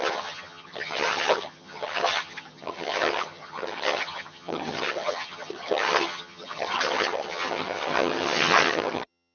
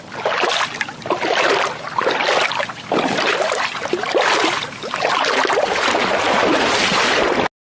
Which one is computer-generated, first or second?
first